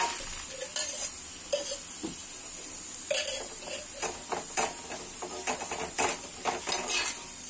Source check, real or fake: real